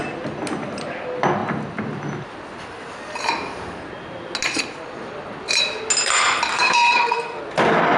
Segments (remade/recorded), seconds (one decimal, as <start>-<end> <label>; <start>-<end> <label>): 0.0-6.5 recorded; 6.5-7.4 remade; 7.4-8.0 recorded